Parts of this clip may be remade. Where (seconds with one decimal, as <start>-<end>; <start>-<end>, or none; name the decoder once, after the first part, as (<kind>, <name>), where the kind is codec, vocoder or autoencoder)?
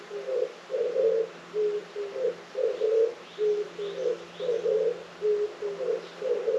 none